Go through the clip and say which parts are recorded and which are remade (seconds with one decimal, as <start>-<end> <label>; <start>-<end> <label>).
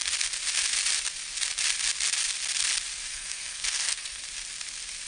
0.0-3.1 recorded; 3.1-4.2 remade; 4.2-5.1 recorded